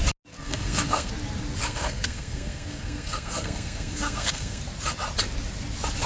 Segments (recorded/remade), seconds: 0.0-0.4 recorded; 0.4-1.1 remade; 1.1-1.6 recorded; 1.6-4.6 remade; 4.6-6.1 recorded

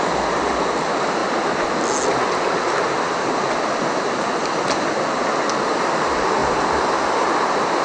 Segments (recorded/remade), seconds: 0.0-7.8 recorded

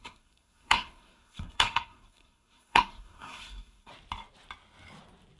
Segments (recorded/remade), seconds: 0.0-3.9 remade; 3.9-5.4 recorded

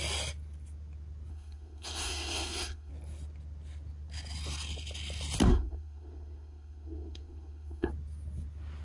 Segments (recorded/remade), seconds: 0.0-1.3 recorded; 1.3-2.9 remade; 2.9-5.5 recorded; 5.5-7.9 remade; 7.9-8.8 recorded

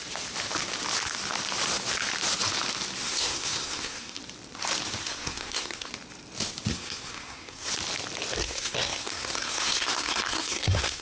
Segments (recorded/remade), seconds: 0.0-3.0 recorded; 3.0-4.2 remade; 4.2-5.0 recorded; 5.0-5.9 remade; 5.9-6.7 recorded; 6.7-7.7 remade; 7.7-8.4 recorded; 8.4-11.0 remade

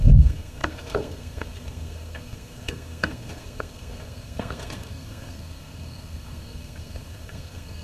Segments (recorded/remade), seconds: 0.0-7.8 remade

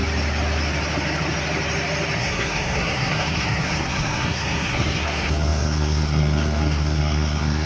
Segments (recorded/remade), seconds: 0.0-2.2 recorded; 2.2-7.7 remade

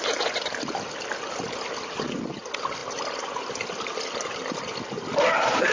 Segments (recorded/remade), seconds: 0.0-5.7 recorded